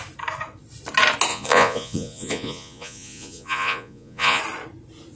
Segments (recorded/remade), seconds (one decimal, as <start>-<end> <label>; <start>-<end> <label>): 0.0-1.3 recorded; 1.3-4.4 remade; 4.4-5.2 recorded